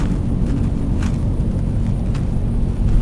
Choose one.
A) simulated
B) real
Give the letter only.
B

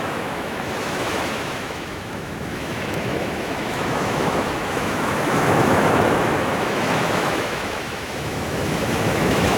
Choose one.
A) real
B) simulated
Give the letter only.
B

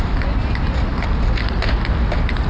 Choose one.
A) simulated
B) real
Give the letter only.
B